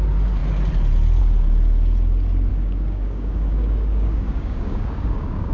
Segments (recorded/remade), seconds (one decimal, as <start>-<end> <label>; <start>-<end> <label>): 0.0-2.5 recorded; 2.5-5.5 remade